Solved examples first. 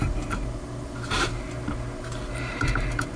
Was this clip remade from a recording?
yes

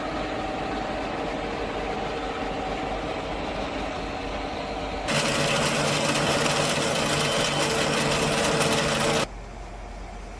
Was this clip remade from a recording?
no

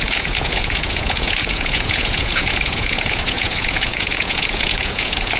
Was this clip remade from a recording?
yes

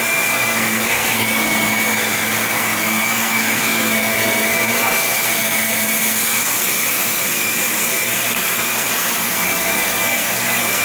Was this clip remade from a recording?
yes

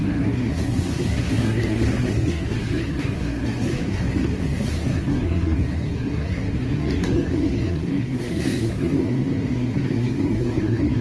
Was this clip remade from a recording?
yes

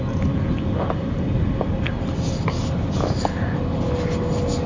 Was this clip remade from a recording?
no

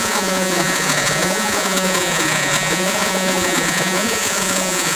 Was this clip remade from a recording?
yes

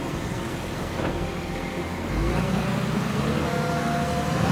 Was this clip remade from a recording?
yes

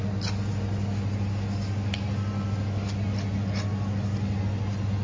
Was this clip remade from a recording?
no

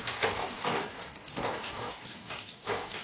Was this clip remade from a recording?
yes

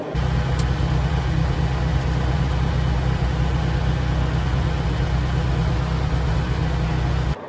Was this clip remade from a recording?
no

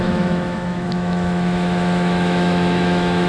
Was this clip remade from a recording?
yes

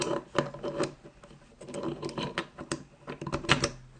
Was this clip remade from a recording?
no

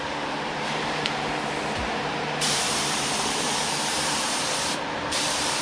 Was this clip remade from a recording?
yes